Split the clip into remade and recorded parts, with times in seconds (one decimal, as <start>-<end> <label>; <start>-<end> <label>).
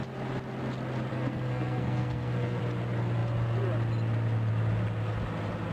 0.0-1.1 recorded; 1.1-2.6 remade; 2.6-5.7 recorded